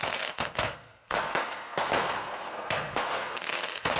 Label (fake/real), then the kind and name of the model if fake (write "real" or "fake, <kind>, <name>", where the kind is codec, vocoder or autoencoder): fake, codec, SNAC